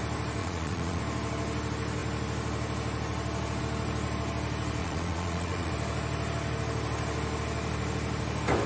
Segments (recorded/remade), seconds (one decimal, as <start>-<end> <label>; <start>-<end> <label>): 0.0-0.4 recorded; 0.4-1.0 remade; 1.0-4.8 recorded; 4.8-5.7 remade; 5.7-8.7 recorded